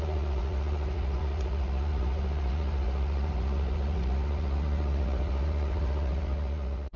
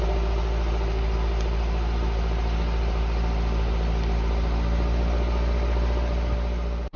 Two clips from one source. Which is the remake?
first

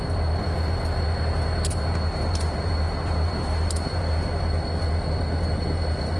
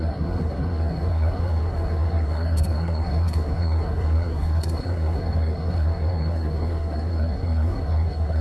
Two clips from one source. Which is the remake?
second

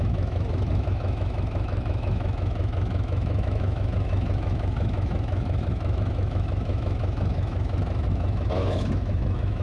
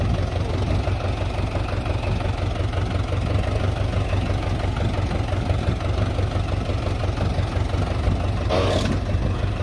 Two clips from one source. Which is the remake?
first